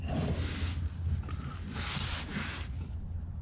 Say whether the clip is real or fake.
real